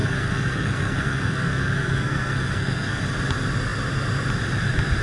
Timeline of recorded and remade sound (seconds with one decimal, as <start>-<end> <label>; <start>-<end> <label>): 0.0-3.0 remade; 3.0-5.0 recorded